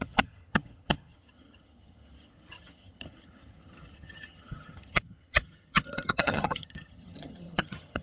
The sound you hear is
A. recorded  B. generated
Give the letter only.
B